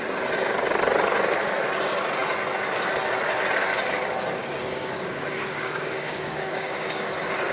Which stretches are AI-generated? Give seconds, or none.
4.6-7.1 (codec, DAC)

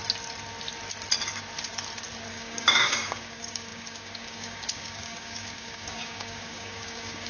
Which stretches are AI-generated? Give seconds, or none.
2.3-7.3 (codec, DAC)

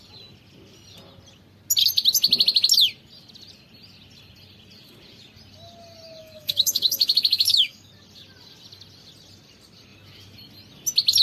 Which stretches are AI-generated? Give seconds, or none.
6.2-7.9 (codec, DAC)

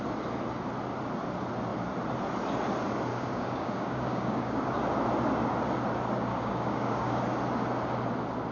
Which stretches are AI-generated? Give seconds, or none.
3.1-4.7 (codec, DAC); 6.3-7.2

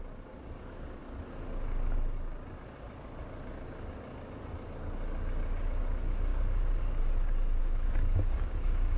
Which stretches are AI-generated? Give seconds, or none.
6.3-7.0 (codec, DAC); 7.6-9.0

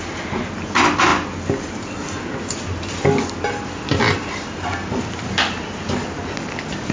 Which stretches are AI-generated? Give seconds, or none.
none